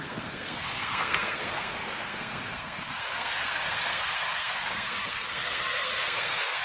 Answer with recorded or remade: remade